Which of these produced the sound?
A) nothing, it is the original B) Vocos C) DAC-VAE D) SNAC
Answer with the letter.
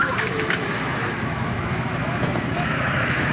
C